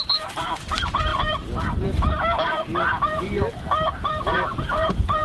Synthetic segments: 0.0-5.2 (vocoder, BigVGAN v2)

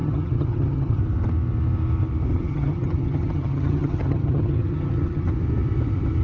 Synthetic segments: 0.0-1.0 (vocoder, HiFi-GAN); 2.3-5.3

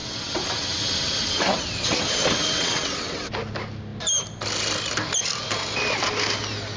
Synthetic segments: 0.0-3.3 (vocoder, WaveNeXt)

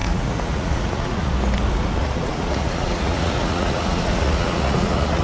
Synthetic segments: 0.0-1.3 (vocoder, Vocos); 2.0-5.2

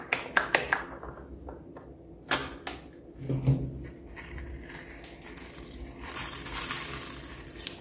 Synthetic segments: none

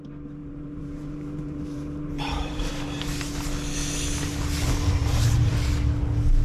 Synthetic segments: 0.4-2.7 (vocoder, BigVGAN v2); 5.0-5.5